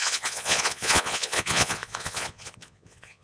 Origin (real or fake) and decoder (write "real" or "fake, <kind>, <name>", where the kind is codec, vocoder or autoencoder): fake, vocoder, Vocos